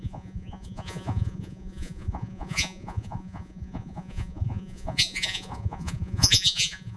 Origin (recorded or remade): remade